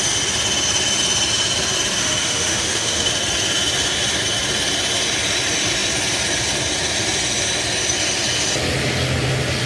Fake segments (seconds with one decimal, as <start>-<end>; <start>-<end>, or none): 2.0-3.1